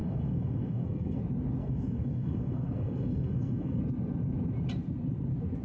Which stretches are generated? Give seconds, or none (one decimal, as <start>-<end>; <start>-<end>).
0.0-1.2; 1.6-3.8